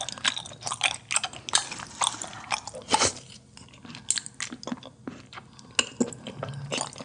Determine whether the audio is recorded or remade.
recorded